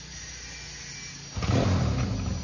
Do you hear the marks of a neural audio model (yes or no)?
no